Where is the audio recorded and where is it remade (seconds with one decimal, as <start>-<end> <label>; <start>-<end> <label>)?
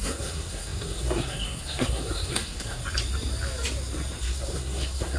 0.0-2.8 remade; 2.8-4.2 recorded; 4.2-5.2 remade